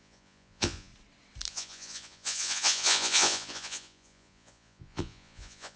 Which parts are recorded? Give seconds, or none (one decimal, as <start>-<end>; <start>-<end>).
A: 0.9-1.5